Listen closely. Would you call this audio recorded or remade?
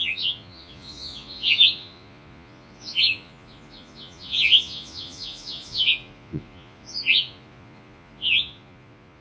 remade